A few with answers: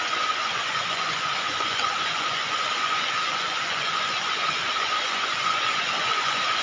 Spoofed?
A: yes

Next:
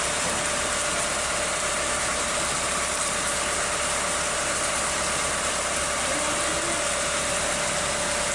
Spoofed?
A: no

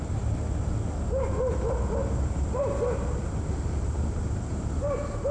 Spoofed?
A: no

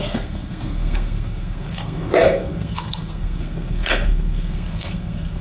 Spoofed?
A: yes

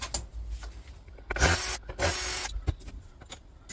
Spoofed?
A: no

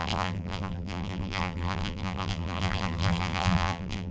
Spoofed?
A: yes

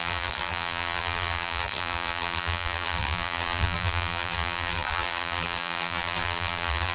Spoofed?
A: yes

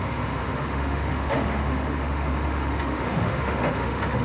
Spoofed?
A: yes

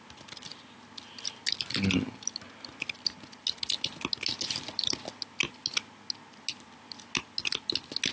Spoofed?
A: no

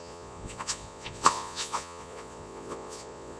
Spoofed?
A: yes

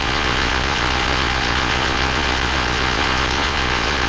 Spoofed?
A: yes